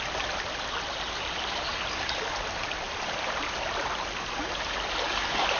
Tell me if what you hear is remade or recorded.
recorded